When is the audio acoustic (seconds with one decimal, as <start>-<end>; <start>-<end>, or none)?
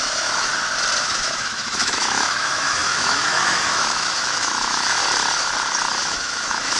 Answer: 0.5-1.0; 5.0-6.0